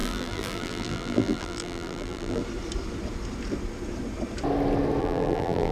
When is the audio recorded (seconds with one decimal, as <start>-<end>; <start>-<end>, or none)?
2.4-5.0